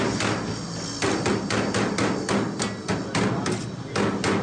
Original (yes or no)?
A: yes